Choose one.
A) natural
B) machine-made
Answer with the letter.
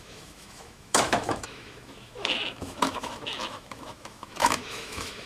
B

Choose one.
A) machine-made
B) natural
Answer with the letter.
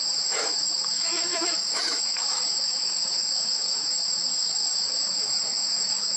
A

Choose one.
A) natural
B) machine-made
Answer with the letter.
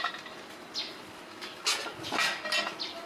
A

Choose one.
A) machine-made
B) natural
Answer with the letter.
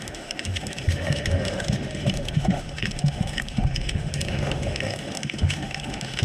A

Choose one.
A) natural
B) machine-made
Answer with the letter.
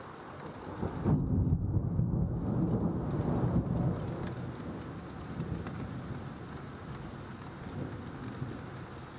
A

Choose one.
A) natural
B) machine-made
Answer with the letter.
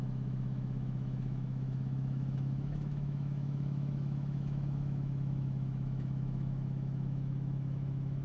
B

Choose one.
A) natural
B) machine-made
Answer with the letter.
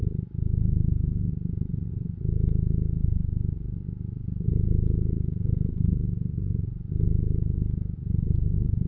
A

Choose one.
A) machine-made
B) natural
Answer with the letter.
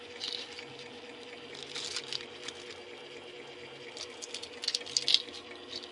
B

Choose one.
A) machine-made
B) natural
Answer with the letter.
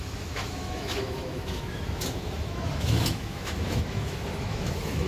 A